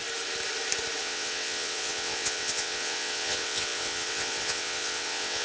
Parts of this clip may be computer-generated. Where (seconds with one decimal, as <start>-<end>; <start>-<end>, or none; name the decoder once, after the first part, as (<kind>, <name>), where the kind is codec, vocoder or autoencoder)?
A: 1.0-5.4 (vocoder, WaveNeXt)

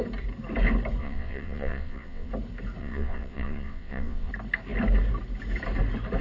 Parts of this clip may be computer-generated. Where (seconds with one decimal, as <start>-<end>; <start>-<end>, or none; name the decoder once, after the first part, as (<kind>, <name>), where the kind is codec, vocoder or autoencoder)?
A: 1.0-2.3 (vocoder, WaveNeXt); 2.8-4.3

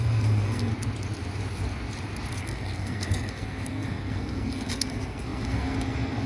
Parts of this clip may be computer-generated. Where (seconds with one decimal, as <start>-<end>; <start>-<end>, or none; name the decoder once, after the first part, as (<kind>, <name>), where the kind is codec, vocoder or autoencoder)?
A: 0.0-0.7 (codec, SNAC); 2.3-6.3